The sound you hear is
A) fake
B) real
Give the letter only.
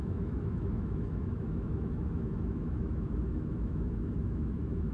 A